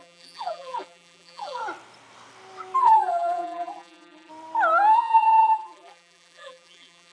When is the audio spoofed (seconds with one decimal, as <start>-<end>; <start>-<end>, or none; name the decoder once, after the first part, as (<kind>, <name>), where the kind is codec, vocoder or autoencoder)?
0.0-1.6 (vocoder, BigVGAN v2); 2.8-4.3; 4.9-7.1

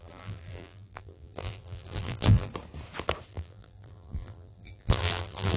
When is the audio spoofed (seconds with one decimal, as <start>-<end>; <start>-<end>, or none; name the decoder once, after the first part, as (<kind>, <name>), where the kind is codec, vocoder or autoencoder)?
0.0-2.5 (vocoder, BigVGAN v2); 3.3-5.6

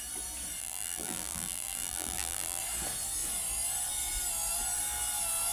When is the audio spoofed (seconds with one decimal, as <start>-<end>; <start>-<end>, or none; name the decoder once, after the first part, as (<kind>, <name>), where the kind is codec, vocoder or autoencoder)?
0.6-2.6 (vocoder, BigVGAN v2)

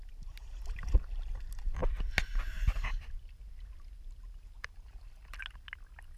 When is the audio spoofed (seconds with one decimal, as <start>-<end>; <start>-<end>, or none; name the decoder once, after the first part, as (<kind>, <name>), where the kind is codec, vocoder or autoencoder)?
none

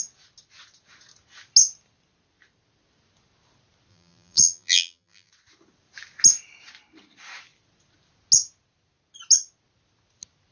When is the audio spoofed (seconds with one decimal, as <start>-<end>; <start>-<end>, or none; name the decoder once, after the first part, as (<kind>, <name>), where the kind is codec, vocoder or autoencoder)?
3.9-5.3 (vocoder, BigVGAN v2)

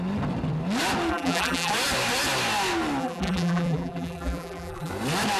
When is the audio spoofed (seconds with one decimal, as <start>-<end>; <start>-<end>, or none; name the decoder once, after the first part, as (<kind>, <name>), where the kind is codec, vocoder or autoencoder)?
1.1-1.7 (vocoder, BigVGAN v2); 3.0-4.9